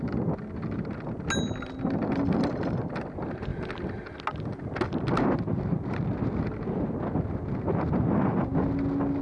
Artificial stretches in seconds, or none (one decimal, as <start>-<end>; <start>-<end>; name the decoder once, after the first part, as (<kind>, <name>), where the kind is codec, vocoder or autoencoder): none